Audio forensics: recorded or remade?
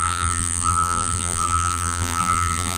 remade